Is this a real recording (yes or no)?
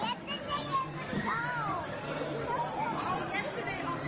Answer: yes